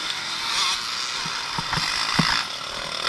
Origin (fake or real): real